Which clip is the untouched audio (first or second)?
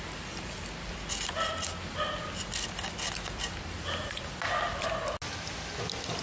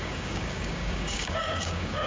first